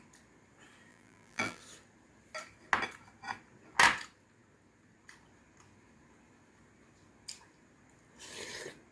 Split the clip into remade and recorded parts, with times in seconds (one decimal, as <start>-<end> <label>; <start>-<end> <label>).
0.0-0.9 recorded; 0.9-1.6 remade; 1.6-8.9 recorded